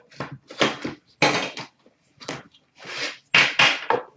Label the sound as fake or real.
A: real